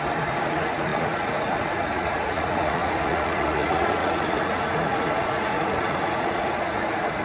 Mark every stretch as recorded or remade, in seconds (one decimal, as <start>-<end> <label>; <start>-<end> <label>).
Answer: 0.0-7.2 remade